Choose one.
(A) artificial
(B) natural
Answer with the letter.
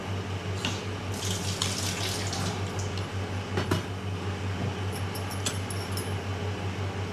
B